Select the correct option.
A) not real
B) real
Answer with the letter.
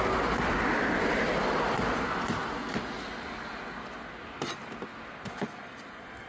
B